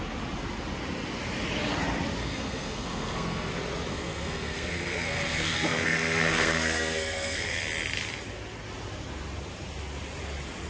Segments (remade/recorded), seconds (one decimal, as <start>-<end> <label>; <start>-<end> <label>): 0.0-2.2 recorded; 2.2-3.5 remade; 3.5-3.9 recorded; 3.9-7.6 remade; 7.6-10.7 recorded

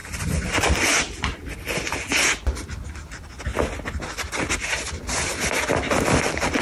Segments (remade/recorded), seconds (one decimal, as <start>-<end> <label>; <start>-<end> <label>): 0.0-1.8 remade; 1.8-3.5 recorded; 3.5-4.3 remade; 4.3-6.6 recorded